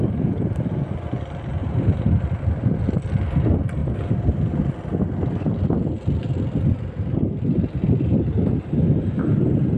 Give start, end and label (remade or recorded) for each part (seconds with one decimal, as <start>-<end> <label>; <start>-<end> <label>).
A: 0.0-1.6 recorded; 1.6-2.4 remade; 2.4-9.8 recorded